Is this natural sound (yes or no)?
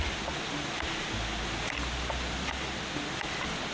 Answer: yes